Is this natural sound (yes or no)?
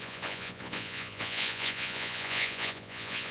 no